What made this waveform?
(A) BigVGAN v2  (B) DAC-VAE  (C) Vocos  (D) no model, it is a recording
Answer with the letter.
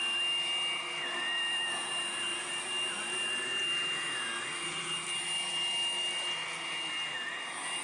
D